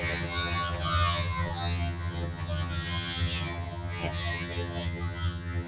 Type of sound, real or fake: fake